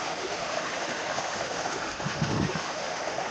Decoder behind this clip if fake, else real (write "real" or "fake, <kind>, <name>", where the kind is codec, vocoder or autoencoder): fake, autoencoder, DAC-VAE